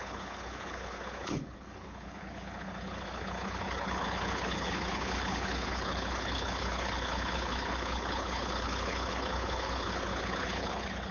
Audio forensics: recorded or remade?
remade